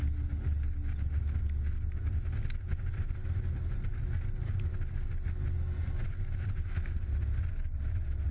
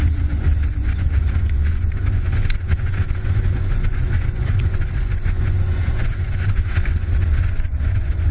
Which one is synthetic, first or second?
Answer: second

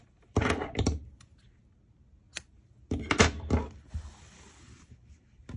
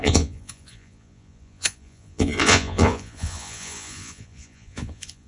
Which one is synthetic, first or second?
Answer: second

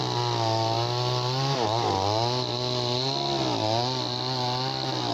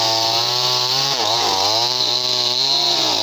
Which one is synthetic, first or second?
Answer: second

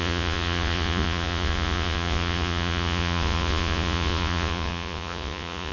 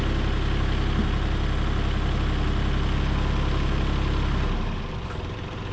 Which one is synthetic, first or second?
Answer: first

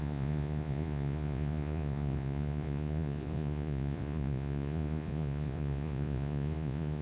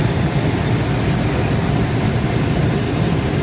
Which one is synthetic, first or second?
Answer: first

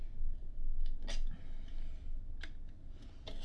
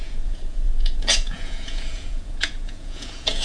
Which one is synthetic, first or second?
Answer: second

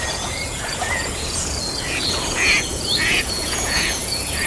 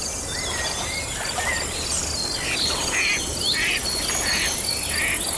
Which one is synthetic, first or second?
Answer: first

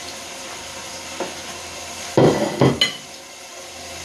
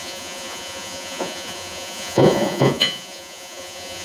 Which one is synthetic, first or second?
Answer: second